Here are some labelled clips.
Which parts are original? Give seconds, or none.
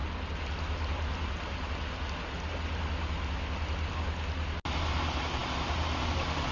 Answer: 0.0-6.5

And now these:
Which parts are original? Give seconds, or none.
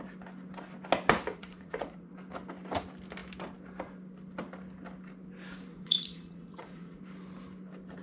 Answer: 0.0-1.3; 2.1-5.7; 7.0-8.0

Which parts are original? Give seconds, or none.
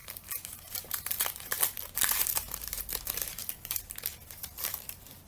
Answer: 2.8-3.4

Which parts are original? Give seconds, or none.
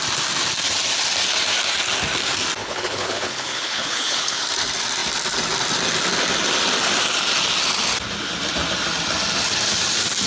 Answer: 0.0-2.6; 4.4-10.3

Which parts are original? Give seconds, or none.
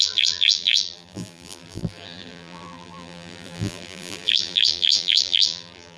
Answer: none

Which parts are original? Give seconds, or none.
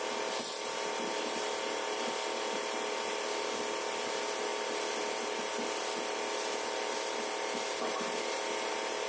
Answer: 0.0-9.1